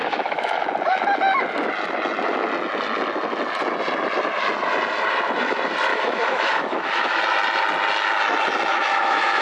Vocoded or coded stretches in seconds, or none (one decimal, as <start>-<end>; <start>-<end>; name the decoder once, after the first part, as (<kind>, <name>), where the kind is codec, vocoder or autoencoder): 0.0-0.6 (autoencoder, DAC-VAE); 5.9-7.2; 8.7-9.4